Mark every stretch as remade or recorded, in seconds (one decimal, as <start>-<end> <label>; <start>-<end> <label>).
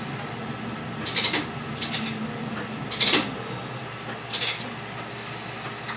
0.0-6.0 recorded